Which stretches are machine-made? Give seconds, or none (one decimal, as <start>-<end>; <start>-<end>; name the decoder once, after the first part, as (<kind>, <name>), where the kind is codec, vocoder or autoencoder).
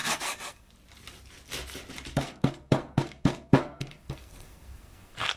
0.0-0.7 (codec, SNAC); 2.1-5.4